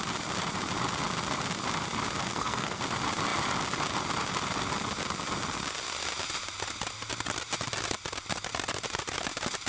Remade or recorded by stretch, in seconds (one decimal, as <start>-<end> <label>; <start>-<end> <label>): 0.0-2.3 recorded; 2.3-2.8 remade; 2.8-9.7 recorded